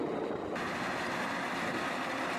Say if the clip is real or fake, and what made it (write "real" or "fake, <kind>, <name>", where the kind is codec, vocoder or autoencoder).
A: real